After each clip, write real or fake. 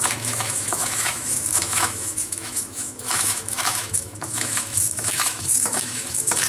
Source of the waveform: fake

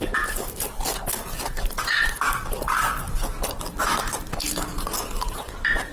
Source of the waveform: real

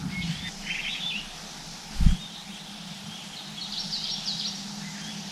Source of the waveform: real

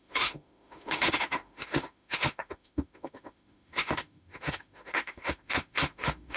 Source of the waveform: fake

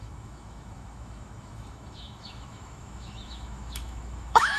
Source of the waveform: fake